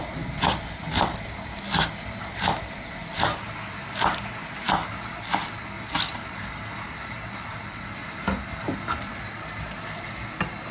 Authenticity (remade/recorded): recorded